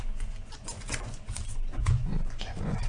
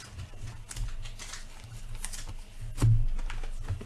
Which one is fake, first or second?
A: first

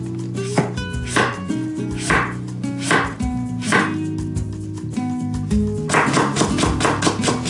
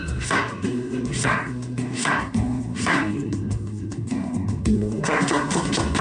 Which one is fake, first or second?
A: second